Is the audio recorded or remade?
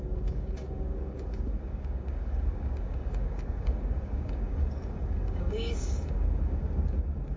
remade